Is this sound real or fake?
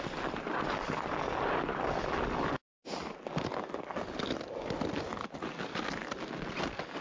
real